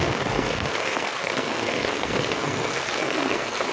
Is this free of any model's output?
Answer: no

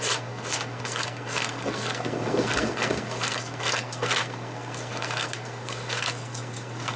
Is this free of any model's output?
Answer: no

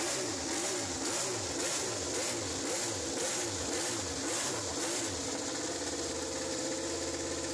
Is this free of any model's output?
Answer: yes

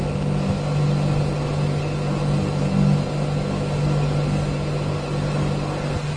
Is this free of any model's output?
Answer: yes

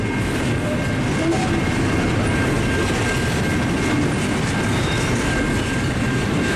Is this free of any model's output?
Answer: yes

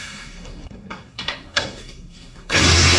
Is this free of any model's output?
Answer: no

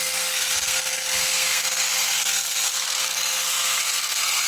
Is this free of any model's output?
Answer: no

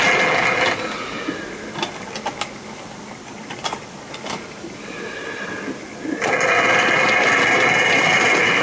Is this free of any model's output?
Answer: yes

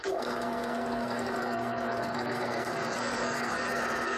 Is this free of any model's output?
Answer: no